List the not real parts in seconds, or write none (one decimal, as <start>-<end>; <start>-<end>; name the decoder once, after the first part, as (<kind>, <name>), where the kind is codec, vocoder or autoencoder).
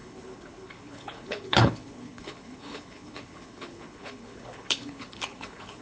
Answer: 0.0-5.8 (codec, HILCodec)